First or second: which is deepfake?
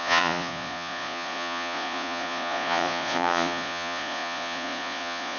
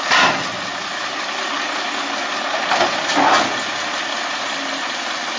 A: first